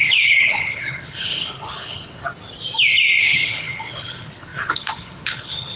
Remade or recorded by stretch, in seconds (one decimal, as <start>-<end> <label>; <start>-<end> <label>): 0.0-2.2 remade; 2.2-3.2 recorded; 3.2-5.8 remade